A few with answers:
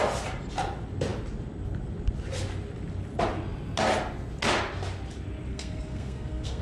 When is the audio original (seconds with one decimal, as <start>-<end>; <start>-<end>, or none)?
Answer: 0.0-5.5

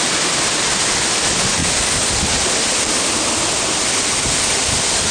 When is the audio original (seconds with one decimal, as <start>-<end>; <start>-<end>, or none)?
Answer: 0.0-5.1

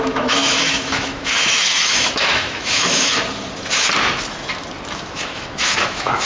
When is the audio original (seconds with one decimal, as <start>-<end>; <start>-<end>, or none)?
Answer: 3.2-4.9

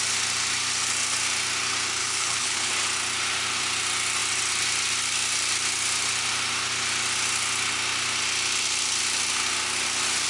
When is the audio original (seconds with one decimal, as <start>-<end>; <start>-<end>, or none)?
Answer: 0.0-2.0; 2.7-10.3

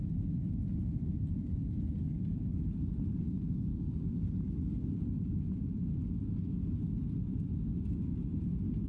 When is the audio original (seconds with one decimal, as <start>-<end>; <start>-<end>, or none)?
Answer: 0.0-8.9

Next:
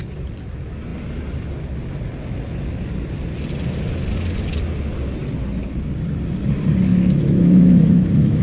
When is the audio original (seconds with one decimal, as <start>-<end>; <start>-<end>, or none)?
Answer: 0.0-6.9

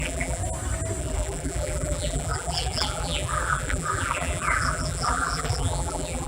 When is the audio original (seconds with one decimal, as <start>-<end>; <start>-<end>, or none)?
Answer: 0.4-1.0

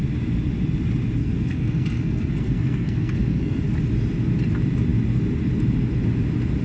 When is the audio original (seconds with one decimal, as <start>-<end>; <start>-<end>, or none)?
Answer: 0.0-1.2; 3.6-6.6